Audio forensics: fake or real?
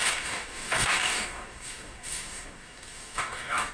fake